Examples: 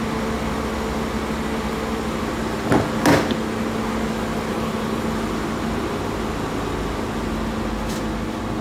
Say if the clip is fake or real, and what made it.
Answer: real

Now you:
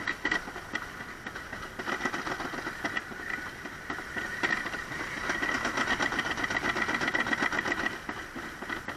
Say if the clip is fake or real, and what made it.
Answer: real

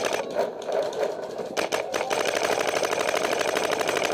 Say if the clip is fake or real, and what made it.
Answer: real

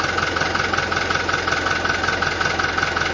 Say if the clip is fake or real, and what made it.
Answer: real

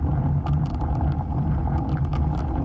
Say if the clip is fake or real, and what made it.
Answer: real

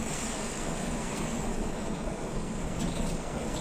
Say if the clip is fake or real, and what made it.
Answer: fake, codec, SNAC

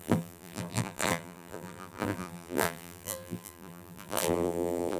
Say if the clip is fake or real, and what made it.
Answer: fake, vocoder, BigVGAN v2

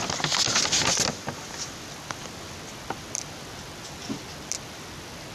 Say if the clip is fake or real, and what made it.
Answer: real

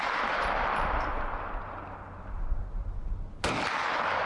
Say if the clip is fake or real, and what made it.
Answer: real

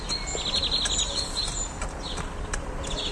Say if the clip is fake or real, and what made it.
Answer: real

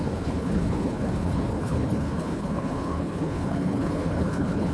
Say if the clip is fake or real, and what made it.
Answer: fake, codec, HILCodec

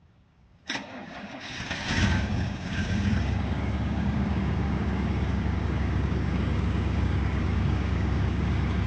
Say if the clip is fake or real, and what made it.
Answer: fake, codec, DAC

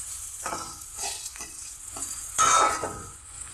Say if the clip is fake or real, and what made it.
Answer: fake, vocoder, Vocos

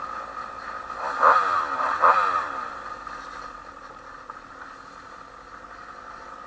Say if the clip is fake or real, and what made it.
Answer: real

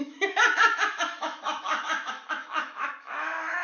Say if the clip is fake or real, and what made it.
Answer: fake, autoencoder, DAC-VAE